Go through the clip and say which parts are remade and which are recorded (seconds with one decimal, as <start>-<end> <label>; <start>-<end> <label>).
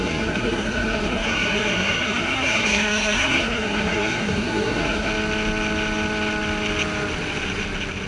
0.0-5.1 remade; 5.1-8.1 recorded